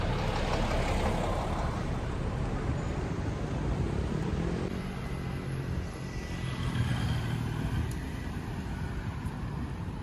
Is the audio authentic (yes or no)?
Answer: yes